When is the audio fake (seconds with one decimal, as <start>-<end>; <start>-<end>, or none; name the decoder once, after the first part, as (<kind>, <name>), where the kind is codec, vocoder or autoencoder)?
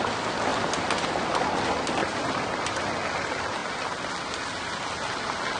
none